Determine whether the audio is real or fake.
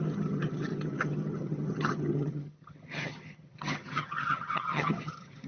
fake